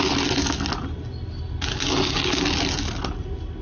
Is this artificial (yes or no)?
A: no